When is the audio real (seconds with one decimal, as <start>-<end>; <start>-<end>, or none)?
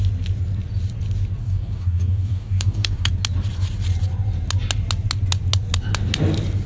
0.0-1.4; 3.1-6.7